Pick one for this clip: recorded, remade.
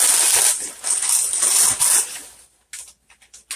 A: recorded